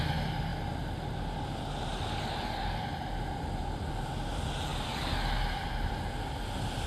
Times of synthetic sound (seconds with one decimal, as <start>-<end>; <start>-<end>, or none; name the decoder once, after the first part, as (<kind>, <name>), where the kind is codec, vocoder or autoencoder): none